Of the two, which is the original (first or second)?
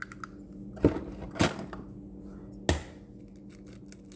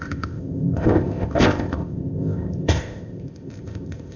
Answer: first